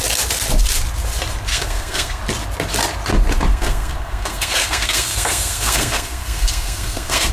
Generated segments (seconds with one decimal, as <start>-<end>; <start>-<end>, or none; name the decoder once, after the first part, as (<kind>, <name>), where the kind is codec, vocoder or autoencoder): 1.5-2.2 (codec, SNAC); 3.5-7.3